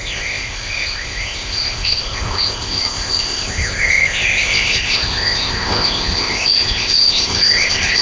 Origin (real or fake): fake